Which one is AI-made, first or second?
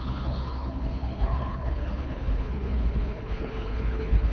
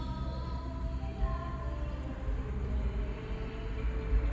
first